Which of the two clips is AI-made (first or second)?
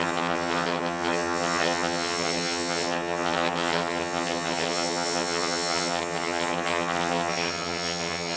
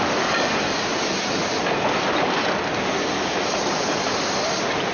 first